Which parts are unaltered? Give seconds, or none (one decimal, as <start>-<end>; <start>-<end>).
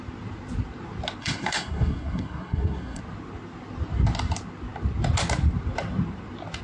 0.0-1.2; 3.0-6.6